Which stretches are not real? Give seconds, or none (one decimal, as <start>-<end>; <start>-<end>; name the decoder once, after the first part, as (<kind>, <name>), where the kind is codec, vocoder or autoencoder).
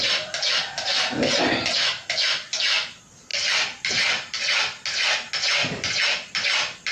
none